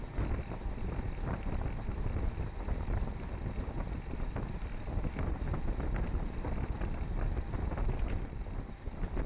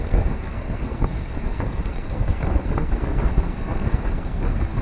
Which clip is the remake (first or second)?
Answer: second